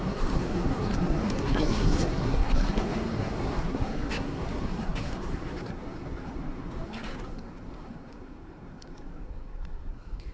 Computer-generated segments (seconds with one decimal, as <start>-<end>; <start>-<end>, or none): 0.0-10.3